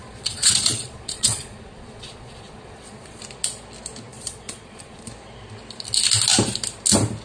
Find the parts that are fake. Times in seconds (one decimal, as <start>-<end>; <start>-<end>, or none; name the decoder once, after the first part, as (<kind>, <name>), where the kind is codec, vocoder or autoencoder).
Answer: 0.0-3.2 (vocoder, Vocos); 4.1-5.1